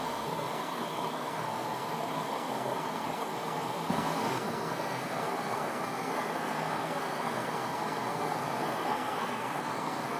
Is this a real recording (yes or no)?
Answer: no